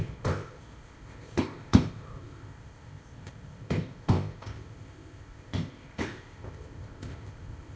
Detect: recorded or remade remade